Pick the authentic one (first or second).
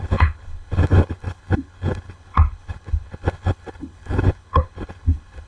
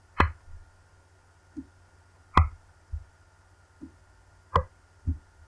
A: second